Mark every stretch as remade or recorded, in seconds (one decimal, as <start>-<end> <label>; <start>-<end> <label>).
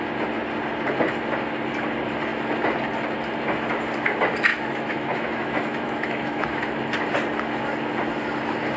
0.0-4.5 recorded; 4.5-6.6 remade; 6.6-8.8 recorded